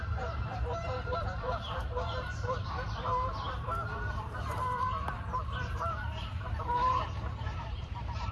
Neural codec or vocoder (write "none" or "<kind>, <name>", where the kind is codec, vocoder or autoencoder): vocoder, BigVGAN v2